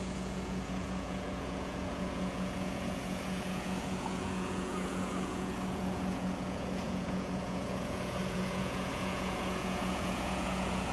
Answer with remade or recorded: remade